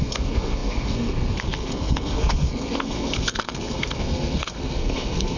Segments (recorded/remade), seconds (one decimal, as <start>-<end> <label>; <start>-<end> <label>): 0.0-5.4 remade